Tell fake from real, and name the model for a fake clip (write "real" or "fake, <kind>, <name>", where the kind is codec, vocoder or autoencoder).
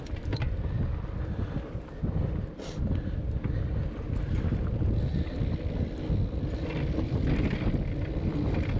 real